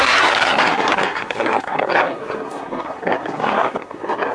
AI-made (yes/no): yes